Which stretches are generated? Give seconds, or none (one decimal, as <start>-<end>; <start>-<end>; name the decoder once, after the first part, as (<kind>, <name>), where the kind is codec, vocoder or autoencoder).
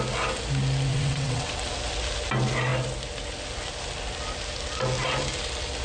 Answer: 0.9-1.5 (vocoder, WaveNeXt)